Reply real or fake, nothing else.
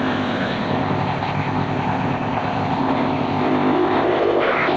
fake